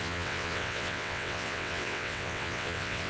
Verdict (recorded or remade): remade